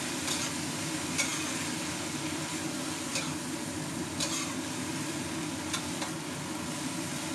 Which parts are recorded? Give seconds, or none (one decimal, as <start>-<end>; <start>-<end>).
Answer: 0.0-7.3